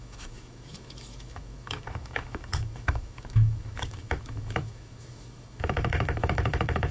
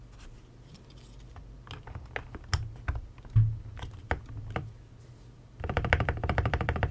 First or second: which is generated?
first